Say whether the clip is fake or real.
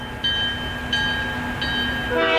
real